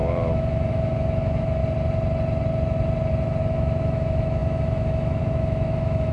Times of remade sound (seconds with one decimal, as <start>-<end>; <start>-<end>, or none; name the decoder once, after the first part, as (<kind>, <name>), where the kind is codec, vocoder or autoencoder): 0.0-1.6 (autoencoder, DAC-VAE); 3.4-6.1